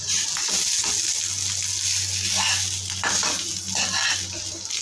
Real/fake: real